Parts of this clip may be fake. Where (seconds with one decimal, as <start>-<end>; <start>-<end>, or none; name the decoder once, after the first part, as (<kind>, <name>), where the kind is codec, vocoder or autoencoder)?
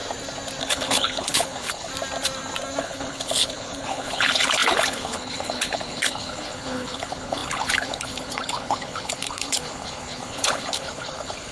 0.6-1.9 (codec, HILCodec); 2.8-11.5